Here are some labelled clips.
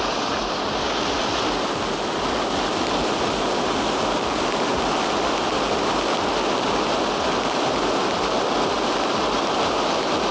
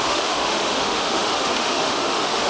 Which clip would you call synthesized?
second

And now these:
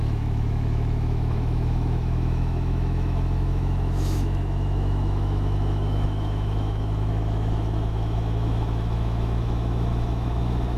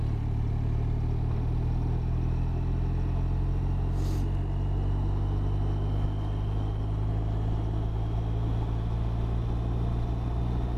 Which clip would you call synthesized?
first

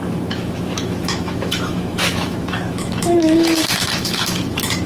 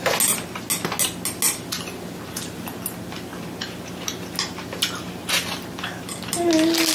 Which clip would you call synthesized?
first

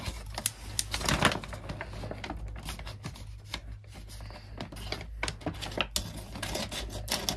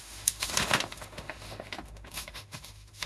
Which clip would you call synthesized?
second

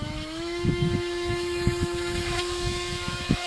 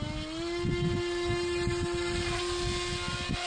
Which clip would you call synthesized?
first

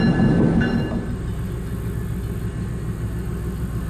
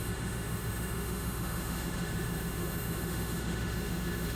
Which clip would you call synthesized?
second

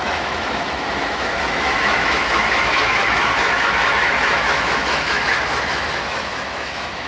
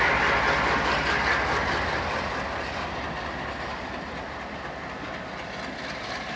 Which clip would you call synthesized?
first